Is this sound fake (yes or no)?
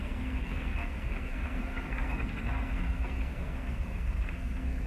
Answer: yes